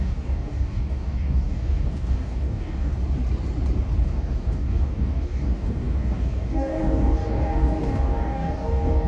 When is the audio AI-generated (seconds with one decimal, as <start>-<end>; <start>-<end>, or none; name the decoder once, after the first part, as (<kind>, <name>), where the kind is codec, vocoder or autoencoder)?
0.0-2.9 (codec, DAC); 4.0-9.1